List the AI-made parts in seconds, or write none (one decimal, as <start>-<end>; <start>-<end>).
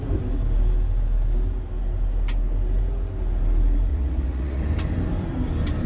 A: 3.9-4.6